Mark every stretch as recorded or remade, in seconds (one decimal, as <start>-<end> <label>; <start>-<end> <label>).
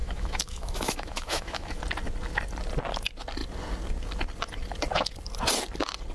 0.0-1.8 remade; 1.8-6.1 recorded